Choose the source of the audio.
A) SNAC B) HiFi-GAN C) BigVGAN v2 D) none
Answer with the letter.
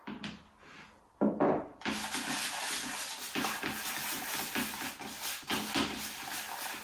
D